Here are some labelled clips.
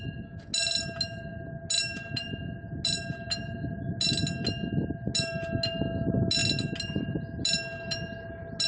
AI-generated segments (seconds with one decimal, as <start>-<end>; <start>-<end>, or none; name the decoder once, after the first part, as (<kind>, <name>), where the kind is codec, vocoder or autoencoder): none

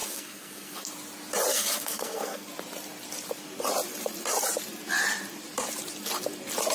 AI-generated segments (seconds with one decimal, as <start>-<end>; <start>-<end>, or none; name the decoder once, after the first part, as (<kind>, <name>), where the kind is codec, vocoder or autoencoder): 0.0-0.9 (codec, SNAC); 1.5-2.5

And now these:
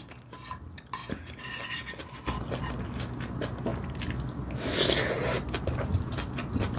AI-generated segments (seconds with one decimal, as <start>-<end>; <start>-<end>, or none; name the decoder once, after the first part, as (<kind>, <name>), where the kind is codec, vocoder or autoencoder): none

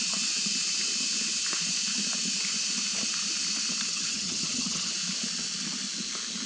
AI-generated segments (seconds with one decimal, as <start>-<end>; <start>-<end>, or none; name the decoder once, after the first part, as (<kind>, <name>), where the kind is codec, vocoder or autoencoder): 3.9-4.9 (vocoder, HiFi-GAN)